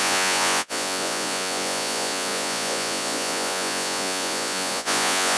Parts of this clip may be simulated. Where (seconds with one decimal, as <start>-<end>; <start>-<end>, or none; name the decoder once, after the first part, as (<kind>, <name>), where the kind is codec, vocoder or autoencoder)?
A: 0.0-5.4 (vocoder, Vocos)